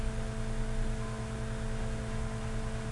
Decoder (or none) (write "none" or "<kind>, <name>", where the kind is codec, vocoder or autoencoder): none